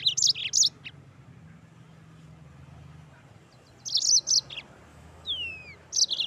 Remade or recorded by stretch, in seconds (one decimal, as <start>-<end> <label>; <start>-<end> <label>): 0.0-4.9 recorded; 4.9-5.5 remade; 5.5-6.3 recorded